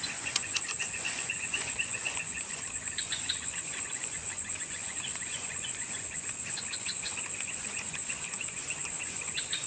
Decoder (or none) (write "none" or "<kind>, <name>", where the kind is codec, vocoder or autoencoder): vocoder, Vocos